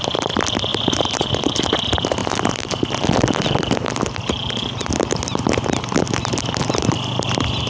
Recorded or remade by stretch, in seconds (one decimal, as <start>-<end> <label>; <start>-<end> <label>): 0.0-0.7 recorded; 0.7-1.6 remade; 1.6-7.7 recorded